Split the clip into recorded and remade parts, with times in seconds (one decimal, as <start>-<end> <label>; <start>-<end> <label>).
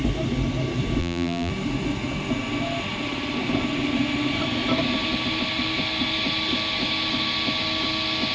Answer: 0.0-1.0 recorded; 1.0-1.5 remade; 1.5-8.3 recorded